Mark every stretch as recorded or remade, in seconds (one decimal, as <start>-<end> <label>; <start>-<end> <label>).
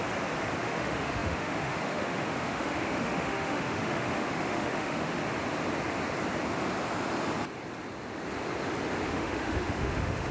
0.0-0.6 recorded; 0.6-5.2 remade; 5.2-9.1 recorded; 9.1-10.3 remade